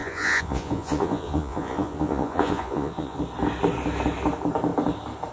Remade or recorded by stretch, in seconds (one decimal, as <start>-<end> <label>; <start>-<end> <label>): 0.0-3.2 remade; 3.2-5.3 recorded